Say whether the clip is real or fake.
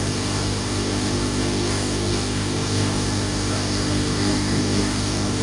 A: fake